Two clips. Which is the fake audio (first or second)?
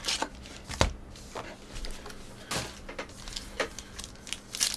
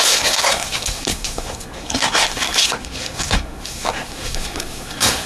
second